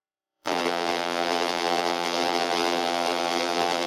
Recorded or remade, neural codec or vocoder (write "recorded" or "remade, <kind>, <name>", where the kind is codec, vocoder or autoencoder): remade, vocoder, BigVGAN v2